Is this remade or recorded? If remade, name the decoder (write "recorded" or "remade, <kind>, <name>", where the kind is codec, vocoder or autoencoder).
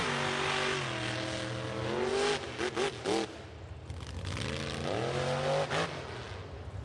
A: recorded